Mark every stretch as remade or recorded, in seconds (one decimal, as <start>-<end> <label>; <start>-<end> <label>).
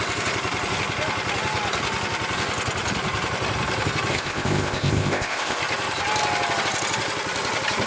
0.0-4.1 recorded; 4.1-5.6 remade; 5.6-7.9 recorded